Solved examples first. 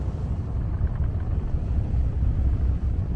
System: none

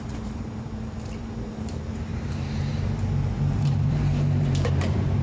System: vocoder, BigVGAN v2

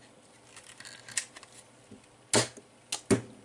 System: none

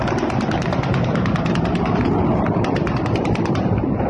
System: vocoder, BigVGAN v2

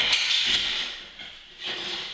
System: none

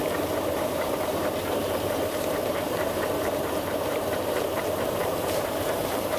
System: vocoder, BigVGAN v2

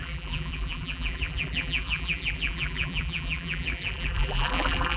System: vocoder, BigVGAN v2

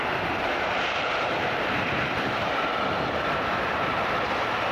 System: vocoder, BigVGAN v2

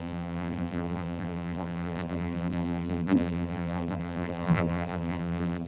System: vocoder, BigVGAN v2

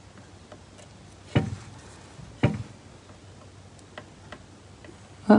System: none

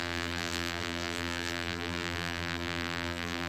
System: vocoder, BigVGAN v2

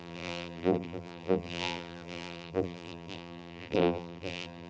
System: vocoder, BigVGAN v2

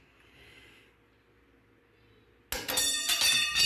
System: none